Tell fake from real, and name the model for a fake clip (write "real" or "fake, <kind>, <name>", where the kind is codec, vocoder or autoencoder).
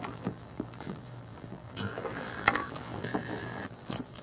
fake, vocoder, BigVGAN v2